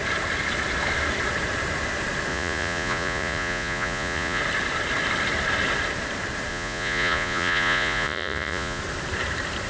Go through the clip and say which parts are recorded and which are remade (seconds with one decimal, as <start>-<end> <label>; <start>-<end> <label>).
0.0-2.3 recorded; 2.3-4.4 remade; 4.4-6.5 recorded; 6.5-8.8 remade; 8.8-9.7 recorded